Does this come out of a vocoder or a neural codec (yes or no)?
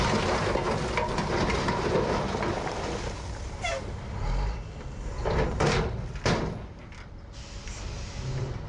no